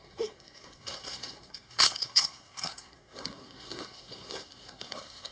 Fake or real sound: fake